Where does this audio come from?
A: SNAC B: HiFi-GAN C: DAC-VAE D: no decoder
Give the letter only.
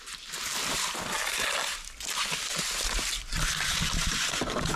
D